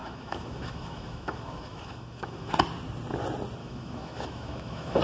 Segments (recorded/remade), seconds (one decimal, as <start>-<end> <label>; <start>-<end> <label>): 0.0-2.5 remade; 2.5-3.6 recorded; 3.6-5.0 remade